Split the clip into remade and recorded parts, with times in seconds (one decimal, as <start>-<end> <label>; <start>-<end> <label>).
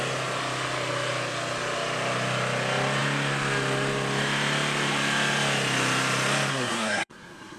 0.0-6.5 recorded; 6.5-7.6 remade